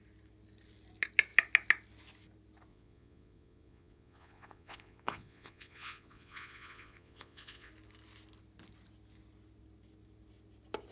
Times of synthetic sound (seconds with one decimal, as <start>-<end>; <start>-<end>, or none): 2.7-7.7